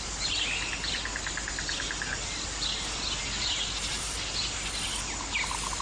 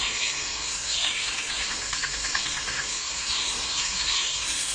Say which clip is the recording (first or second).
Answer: first